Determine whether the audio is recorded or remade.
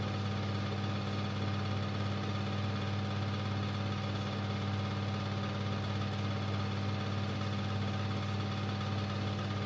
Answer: recorded